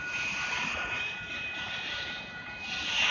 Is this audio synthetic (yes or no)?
yes